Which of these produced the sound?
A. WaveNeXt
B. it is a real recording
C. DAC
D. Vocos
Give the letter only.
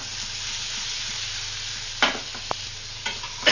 B